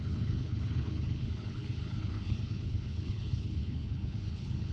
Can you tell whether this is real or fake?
fake